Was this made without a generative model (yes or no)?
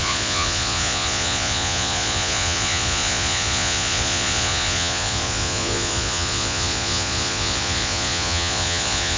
no